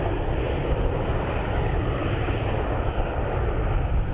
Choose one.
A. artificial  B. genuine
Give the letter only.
B